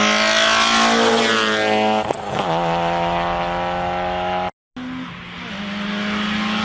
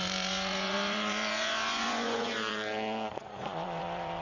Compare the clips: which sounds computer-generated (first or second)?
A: second